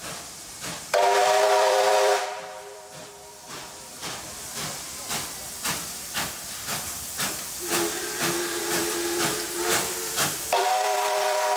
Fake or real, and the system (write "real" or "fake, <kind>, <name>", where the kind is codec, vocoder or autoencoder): fake, vocoder, BigVGAN v2